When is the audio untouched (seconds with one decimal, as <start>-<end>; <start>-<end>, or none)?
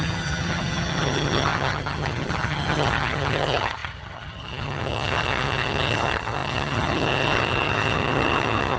none